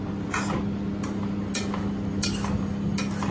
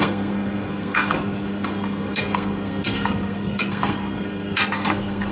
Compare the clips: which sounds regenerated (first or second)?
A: second